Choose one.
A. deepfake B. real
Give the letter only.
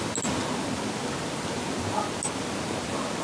B